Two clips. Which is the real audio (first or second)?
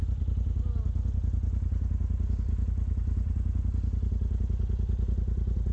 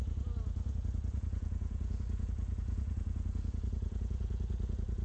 first